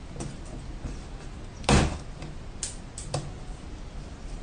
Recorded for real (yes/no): yes